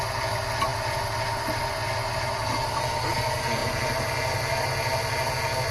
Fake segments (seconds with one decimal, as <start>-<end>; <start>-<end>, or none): none